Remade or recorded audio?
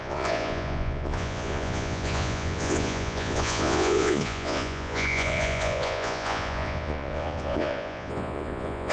remade